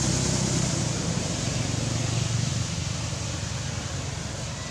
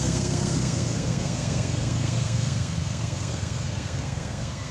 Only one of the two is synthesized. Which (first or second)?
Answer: second